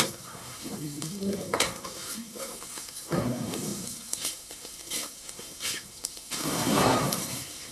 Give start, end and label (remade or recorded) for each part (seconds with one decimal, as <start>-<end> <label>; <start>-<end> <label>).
0.0-7.7 remade

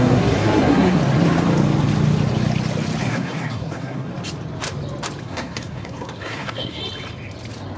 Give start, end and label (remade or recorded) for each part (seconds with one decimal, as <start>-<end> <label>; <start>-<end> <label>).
0.0-1.0 remade; 1.0-3.0 recorded; 3.0-4.1 remade; 4.1-5.2 recorded; 5.2-6.8 remade; 6.8-7.8 recorded

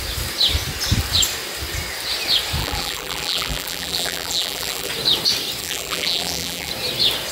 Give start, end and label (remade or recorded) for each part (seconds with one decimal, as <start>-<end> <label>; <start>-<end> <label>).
0.0-2.6 recorded; 2.6-4.9 remade; 4.9-5.6 recorded; 5.6-6.7 remade; 6.7-7.3 recorded

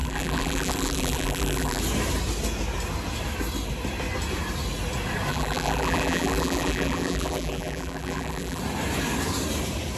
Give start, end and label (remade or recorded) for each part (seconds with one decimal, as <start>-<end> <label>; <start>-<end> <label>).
0.0-1.8 remade; 1.8-5.3 recorded; 5.3-8.6 remade; 8.6-10.0 recorded

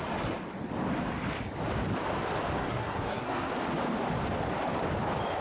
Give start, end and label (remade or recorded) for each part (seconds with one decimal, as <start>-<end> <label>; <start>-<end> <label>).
0.0-2.6 recorded; 2.6-3.5 remade; 3.5-5.4 recorded

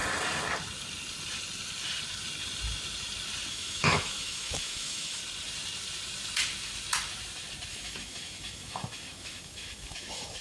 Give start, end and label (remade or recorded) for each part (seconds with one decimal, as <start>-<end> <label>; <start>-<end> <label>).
0.0-3.5 recorded; 3.5-5.2 remade; 5.2-7.7 recorded; 7.7-10.4 remade

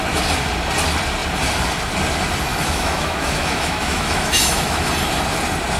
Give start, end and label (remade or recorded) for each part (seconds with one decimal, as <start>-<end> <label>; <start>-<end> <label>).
0.0-2.5 recorded; 2.5-4.9 remade; 4.9-5.8 recorded

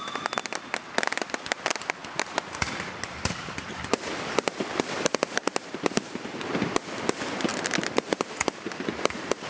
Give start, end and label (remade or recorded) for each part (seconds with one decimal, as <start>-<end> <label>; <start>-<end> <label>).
0.0-2.0 recorded; 2.0-6.6 remade; 6.6-7.5 recorded; 7.5-9.5 remade